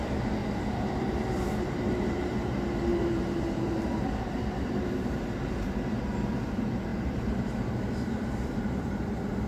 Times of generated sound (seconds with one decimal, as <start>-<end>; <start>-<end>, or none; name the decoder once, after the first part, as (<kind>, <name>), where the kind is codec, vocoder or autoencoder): 0.4-2.5 (vocoder, BigVGAN v2); 2.9-5.9; 6.9-8.9